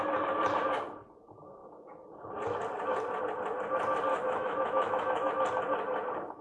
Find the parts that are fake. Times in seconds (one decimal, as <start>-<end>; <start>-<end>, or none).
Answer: 4.1-5.3